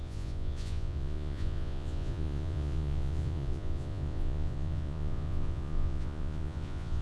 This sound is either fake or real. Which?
fake